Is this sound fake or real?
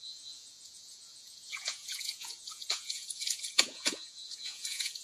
fake